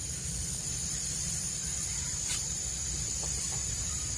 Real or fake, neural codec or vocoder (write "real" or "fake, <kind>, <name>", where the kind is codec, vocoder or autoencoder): fake, vocoder, BigVGAN v2